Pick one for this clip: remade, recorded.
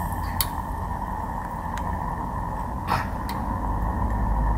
recorded